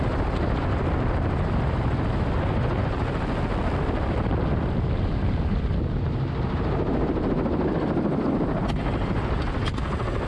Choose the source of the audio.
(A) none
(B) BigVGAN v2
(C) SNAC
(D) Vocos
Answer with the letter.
A